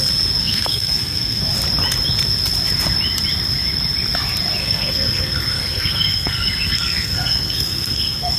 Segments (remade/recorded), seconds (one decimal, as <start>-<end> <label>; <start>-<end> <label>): 0.0-0.4 recorded; 0.4-1.4 remade; 1.4-4.6 recorded; 4.6-8.4 remade